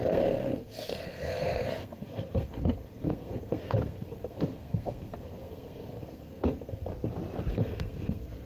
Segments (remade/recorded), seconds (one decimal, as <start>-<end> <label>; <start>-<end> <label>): 0.0-6.9 remade; 6.9-7.5 recorded; 7.5-8.4 remade